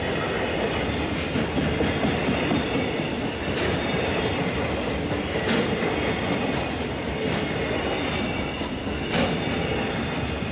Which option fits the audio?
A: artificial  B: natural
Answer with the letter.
B